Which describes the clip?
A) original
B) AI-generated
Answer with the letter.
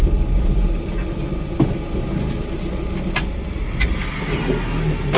A